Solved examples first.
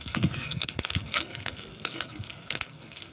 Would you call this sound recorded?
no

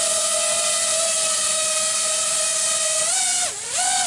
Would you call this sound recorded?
yes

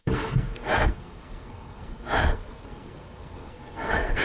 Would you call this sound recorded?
no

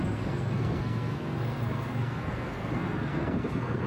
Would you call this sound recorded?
no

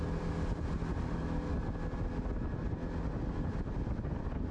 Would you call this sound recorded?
yes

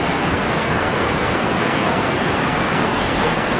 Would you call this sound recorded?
no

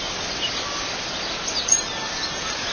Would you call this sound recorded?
yes